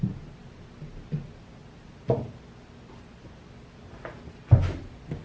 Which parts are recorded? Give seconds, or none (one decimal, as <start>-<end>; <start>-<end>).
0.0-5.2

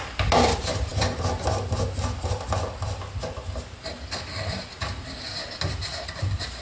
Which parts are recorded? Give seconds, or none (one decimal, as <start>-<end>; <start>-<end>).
0.0-6.6

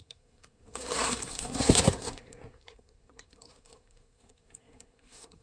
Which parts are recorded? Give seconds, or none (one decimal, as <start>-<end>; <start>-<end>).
none